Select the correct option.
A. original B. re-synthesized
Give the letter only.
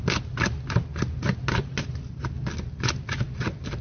A